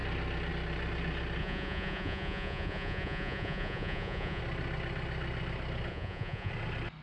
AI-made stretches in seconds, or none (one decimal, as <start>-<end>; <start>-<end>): 1.4-4.4; 5.9-6.5